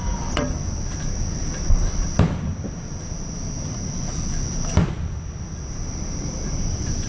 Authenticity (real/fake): real